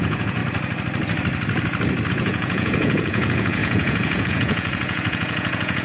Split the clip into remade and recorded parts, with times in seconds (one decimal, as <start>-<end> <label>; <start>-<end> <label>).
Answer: 0.0-0.4 remade; 0.4-2.1 recorded; 2.1-5.8 remade